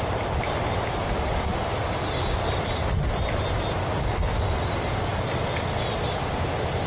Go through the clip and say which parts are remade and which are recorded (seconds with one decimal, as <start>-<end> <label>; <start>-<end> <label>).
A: 0.0-3.8 recorded; 3.8-4.4 remade; 4.4-6.9 recorded